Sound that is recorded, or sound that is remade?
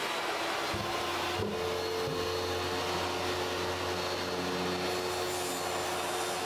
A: recorded